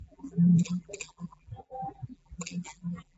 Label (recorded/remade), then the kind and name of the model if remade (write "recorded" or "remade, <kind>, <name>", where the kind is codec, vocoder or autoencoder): remade, vocoder, BigVGAN v2